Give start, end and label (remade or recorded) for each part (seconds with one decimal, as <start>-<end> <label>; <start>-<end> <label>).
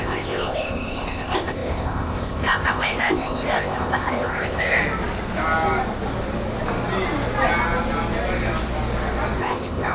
0.0-4.8 remade; 4.8-9.4 recorded; 9.4-9.9 remade